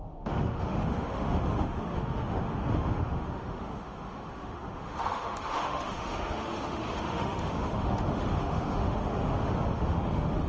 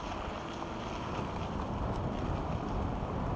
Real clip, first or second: second